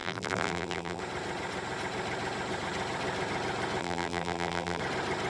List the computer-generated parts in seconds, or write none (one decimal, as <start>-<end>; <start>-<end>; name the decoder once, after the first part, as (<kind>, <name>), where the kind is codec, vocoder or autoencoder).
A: 0.0-1.0 (vocoder, BigVGAN v2); 3.8-4.8